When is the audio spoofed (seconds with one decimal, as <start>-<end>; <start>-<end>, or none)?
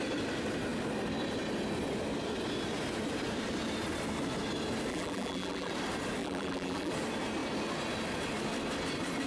4.9-5.7; 6.2-6.9